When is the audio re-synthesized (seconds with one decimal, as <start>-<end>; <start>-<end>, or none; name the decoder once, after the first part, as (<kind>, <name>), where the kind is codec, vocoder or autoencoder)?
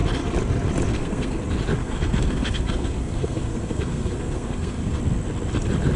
0.9-1.4 (codec, SNAC); 1.8-5.0